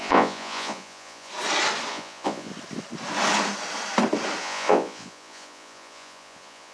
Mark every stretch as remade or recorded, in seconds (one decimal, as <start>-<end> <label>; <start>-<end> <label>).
0.0-1.3 remade; 1.3-1.9 recorded; 1.9-2.5 remade; 2.5-4.4 recorded; 4.4-6.7 remade